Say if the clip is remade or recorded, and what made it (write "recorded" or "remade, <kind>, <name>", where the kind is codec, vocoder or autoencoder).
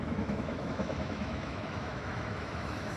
remade, autoencoder, DAC-VAE